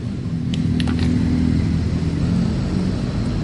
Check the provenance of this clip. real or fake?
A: real